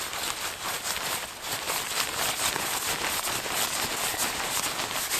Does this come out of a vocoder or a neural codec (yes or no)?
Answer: no